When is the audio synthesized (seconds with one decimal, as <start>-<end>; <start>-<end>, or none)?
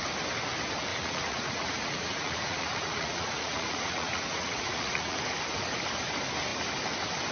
0.9-5.2